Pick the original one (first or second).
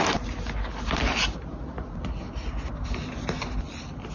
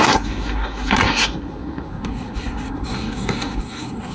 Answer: first